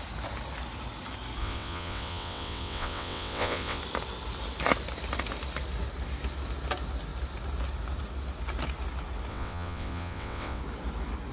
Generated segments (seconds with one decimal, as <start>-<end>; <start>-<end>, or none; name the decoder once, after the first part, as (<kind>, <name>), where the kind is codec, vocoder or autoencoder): 1.4-3.8 (vocoder, WaveNeXt); 9.3-10.6